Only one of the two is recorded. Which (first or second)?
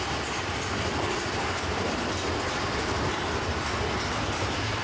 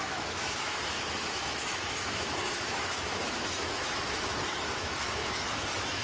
first